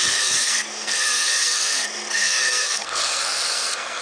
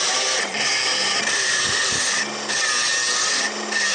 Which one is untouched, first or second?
second